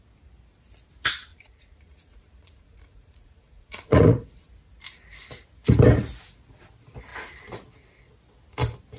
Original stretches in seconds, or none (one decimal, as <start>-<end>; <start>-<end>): 0.0-1.3; 4.5-9.0